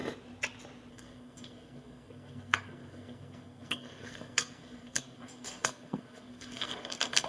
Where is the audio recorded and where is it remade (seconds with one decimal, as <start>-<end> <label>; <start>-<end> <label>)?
0.0-0.9 recorded; 0.9-7.3 remade